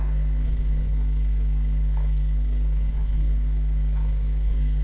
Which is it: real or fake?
fake